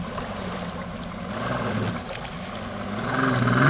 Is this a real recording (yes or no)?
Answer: yes